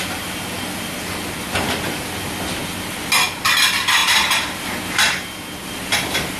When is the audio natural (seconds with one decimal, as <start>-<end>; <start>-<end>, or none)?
0.0-6.4